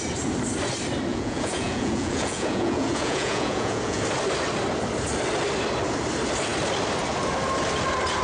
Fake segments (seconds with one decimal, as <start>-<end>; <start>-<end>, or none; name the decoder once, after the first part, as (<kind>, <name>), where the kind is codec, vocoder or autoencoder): 1.1-4.0 (vocoder, Vocos)